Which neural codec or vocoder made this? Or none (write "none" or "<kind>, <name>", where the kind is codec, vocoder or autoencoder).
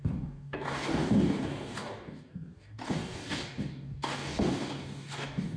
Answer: codec, DAC